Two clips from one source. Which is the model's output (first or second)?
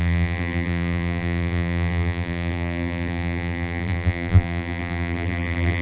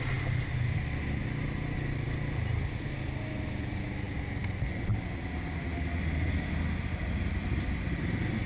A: first